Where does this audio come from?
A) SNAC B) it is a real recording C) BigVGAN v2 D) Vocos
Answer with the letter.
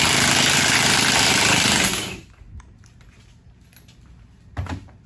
B